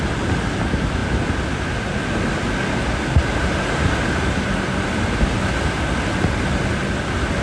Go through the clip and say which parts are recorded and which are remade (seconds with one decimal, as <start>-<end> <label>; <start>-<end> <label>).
0.0-7.4 recorded